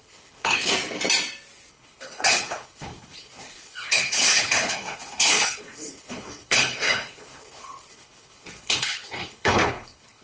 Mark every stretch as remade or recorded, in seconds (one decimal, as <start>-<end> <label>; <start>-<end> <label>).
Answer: 0.0-0.7 remade; 0.7-1.7 recorded; 1.7-10.2 remade